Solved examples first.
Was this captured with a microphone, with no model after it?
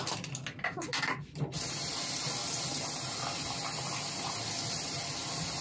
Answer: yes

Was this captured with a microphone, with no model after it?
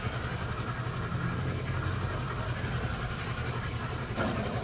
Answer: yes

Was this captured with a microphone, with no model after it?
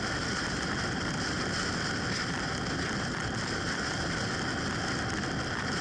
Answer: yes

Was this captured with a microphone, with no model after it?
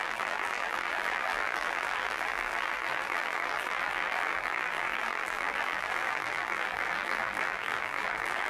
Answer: no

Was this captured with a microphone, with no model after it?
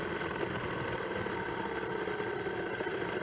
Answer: yes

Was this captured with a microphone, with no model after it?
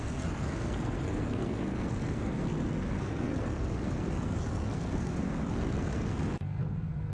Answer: no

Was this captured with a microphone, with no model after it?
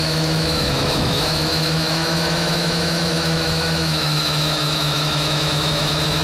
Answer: no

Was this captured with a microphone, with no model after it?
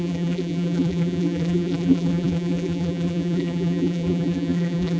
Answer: no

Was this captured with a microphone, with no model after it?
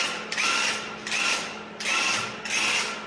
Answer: yes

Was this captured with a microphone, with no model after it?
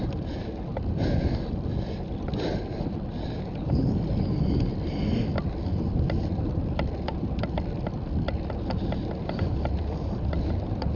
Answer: yes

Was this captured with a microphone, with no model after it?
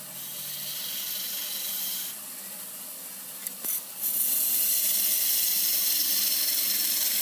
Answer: yes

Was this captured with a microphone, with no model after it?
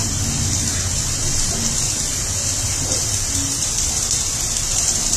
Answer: yes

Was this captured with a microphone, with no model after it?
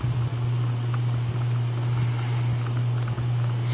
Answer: yes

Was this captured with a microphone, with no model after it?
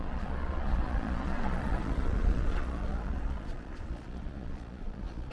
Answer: no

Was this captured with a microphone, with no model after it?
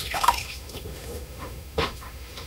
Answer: no